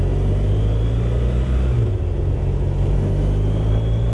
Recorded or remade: recorded